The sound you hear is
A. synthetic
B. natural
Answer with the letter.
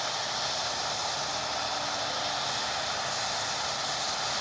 B